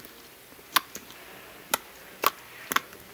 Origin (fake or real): real